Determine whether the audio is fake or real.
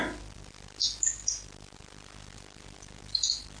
real